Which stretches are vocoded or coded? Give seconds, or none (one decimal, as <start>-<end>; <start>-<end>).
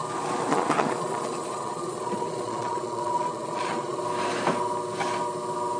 0.5-4.0